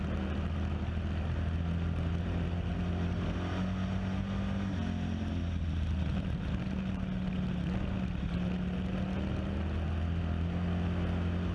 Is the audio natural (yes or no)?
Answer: yes